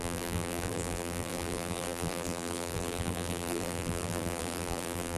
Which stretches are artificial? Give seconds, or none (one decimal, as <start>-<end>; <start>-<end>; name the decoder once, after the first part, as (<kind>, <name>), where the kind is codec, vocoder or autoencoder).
0.0-5.2 (vocoder, BigVGAN v2)

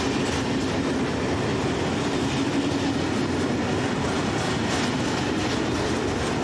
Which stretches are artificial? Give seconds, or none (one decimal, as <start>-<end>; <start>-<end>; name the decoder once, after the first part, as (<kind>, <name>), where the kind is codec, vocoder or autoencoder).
1.5-4.5 (vocoder, BigVGAN v2)